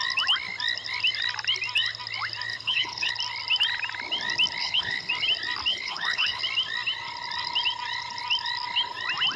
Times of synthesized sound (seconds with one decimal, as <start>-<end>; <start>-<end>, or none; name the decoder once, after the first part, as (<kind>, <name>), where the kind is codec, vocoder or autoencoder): 2.5-3.1 (codec, HILCodec); 4.6-5.1; 5.7-6.4